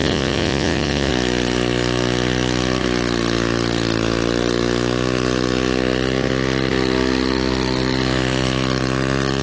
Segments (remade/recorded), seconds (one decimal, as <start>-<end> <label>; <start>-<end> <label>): 0.0-1.1 remade; 1.1-9.4 recorded